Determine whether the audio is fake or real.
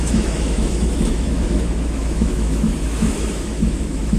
fake